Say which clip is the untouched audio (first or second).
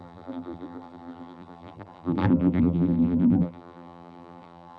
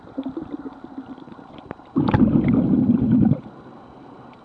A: second